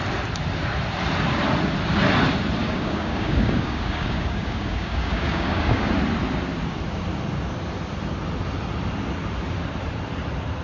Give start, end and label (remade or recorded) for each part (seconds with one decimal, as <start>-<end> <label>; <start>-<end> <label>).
0.0-2.6 recorded; 2.6-5.9 remade; 5.9-10.6 recorded